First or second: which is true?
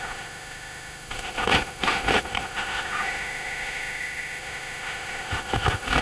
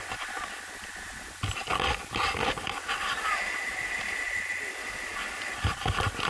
second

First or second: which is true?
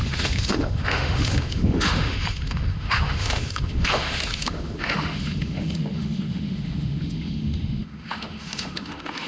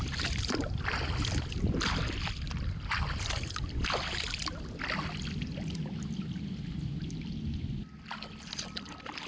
second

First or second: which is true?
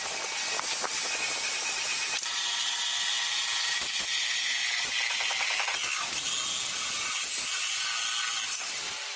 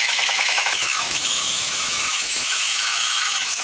first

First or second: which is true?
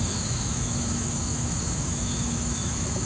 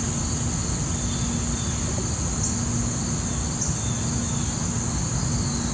second